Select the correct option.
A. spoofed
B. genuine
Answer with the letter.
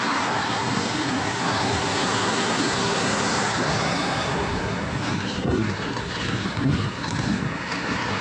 A